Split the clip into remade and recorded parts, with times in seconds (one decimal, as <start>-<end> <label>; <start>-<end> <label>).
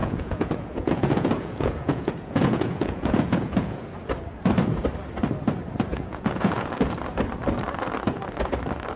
0.0-3.9 remade; 3.9-5.9 recorded; 5.9-6.7 remade; 6.7-9.0 recorded